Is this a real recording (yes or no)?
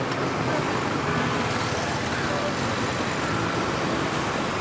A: yes